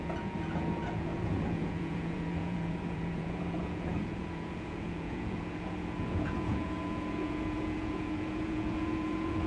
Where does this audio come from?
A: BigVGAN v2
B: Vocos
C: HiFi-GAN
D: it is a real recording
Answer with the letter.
B